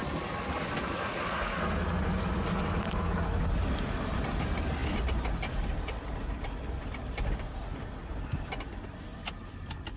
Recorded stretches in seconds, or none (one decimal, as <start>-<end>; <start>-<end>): 0.0-10.0